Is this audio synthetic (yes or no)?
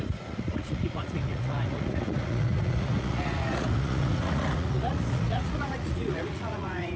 yes